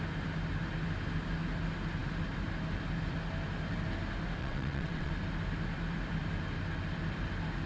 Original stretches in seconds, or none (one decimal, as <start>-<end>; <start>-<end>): 0.0-4.4; 5.1-7.7